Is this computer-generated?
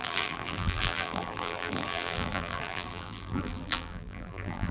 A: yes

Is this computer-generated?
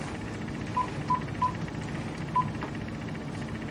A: no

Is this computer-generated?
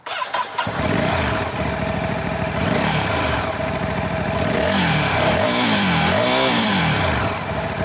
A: yes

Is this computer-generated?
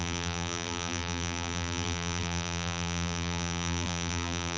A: yes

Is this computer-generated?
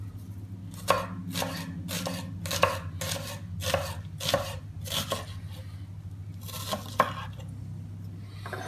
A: no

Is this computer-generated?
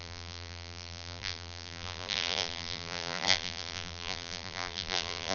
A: yes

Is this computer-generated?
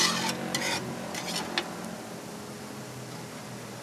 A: no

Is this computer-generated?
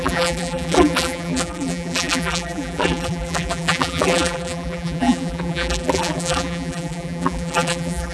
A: yes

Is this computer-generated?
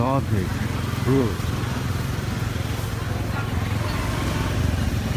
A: no